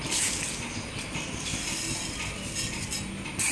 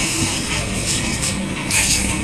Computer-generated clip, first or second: second